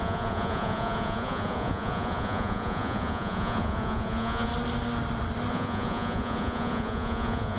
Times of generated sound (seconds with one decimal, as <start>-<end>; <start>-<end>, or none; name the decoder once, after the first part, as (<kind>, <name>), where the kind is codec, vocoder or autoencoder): 0.0-4.5 (vocoder, Vocos); 5.5-7.6